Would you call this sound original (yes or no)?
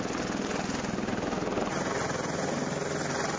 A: yes